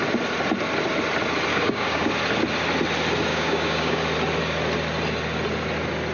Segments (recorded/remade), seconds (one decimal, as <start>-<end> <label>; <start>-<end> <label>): 0.0-1.5 recorded; 1.5-2.1 remade; 2.1-3.3 recorded; 3.3-4.0 remade; 4.0-6.1 recorded